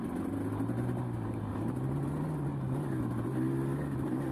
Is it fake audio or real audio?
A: real